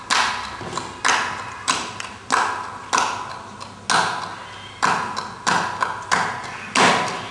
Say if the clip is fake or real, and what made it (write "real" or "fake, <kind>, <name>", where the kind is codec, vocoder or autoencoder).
real